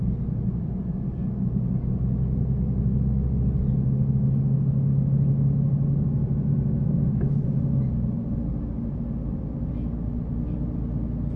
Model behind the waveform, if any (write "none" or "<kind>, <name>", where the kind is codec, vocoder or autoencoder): none